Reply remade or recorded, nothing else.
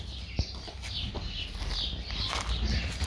recorded